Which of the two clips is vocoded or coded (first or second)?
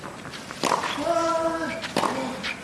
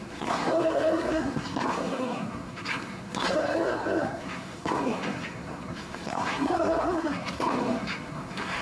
second